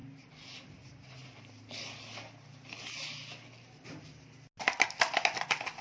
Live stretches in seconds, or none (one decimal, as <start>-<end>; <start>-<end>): 0.0-5.8